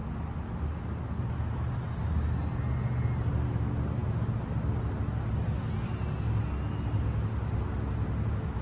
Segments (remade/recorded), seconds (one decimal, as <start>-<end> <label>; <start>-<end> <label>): 0.0-8.6 recorded